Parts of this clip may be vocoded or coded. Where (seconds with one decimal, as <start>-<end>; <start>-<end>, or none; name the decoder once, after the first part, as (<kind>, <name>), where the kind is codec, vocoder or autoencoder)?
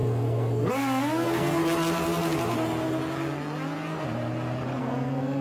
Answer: 0.0-1.6 (codec, SNAC); 4.8-5.4